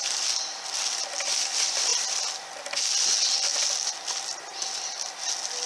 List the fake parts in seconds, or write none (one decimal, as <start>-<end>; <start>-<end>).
none